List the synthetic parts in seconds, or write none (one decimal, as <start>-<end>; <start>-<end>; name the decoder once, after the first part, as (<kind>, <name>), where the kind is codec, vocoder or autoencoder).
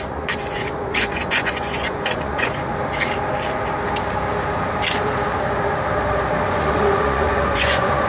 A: 0.0-2.7 (vocoder, Vocos); 6.5-8.1